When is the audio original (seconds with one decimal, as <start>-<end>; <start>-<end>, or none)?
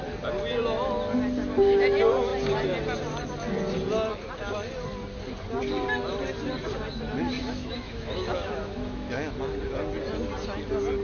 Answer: 0.0-7.4; 9.1-11.0